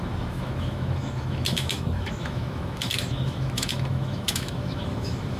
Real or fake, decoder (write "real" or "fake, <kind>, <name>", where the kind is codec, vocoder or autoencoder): fake, autoencoder, DAC-VAE